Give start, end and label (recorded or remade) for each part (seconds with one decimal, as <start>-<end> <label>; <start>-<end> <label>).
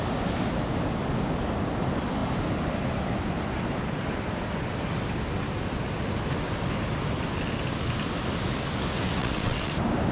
0.0-9.2 recorded; 9.2-9.7 remade; 9.7-10.1 recorded